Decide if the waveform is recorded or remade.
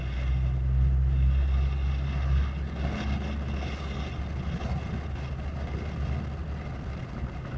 recorded